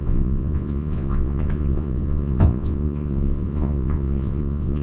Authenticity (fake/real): fake